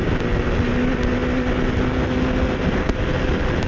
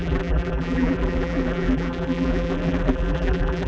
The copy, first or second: second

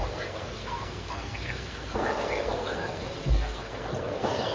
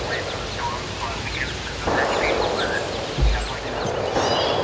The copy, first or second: first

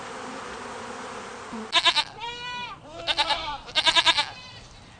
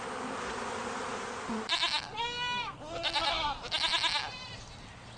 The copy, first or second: first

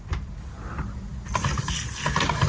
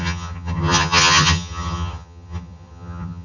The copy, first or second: second